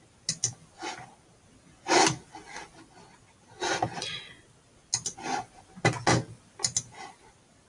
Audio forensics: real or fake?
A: real